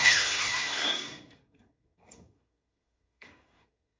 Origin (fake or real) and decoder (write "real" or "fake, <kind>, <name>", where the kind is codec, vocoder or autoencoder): fake, codec, SNAC